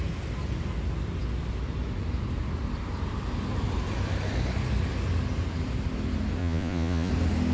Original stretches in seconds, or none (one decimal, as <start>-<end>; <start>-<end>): 0.0-6.4; 7.1-7.5